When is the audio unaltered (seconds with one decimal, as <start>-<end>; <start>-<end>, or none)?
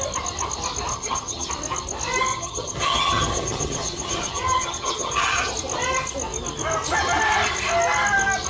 0.0-0.9; 1.5-2.3; 5.5-8.5